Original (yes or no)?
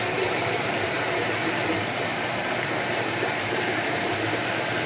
no